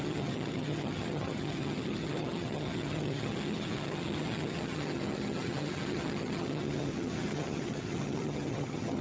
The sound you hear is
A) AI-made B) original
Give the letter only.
A